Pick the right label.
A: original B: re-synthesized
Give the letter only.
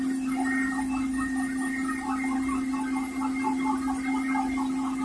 A